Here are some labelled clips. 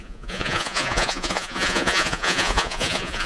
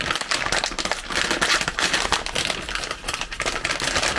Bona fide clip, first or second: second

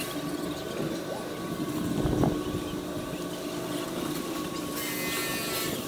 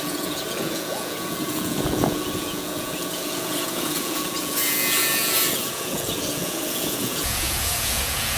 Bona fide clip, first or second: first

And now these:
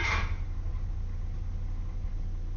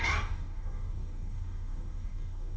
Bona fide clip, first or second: first